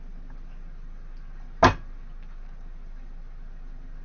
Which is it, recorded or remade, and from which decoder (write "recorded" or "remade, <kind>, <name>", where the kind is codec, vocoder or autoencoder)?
recorded